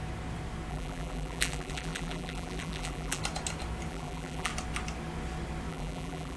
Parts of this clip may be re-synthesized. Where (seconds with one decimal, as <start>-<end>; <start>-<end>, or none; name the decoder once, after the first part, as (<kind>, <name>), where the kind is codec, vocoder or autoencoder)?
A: 0.7-3.2 (vocoder, BigVGAN v2); 3.9-4.5; 5.7-6.4